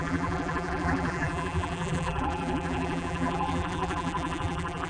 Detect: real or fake fake